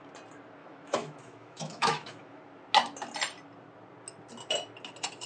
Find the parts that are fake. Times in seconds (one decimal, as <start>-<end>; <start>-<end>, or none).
0.6-2.4